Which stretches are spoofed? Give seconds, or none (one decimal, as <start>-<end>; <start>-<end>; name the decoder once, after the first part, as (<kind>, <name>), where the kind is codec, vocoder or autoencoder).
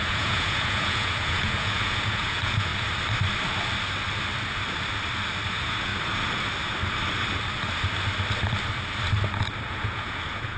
0.0-2.7 (vocoder, Vocos); 5.5-5.9; 9.6-10.6